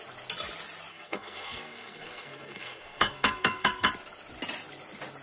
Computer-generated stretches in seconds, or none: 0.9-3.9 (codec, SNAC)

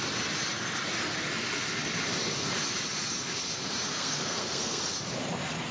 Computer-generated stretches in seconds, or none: 3.9-4.8 (codec, SNAC)